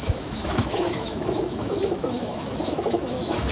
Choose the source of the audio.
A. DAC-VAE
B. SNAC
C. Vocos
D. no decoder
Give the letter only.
A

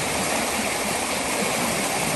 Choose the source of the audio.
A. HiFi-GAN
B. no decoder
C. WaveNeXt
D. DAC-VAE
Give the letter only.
B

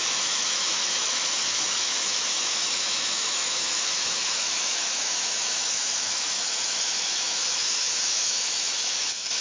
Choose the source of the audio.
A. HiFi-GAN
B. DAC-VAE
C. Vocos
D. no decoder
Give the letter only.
B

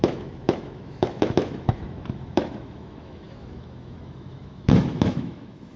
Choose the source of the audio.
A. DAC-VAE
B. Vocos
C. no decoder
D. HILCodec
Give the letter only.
A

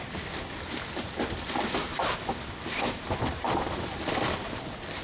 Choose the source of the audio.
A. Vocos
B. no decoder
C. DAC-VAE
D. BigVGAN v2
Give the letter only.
B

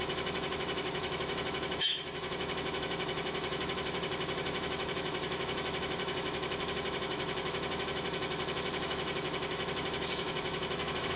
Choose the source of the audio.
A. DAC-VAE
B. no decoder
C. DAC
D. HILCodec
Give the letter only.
A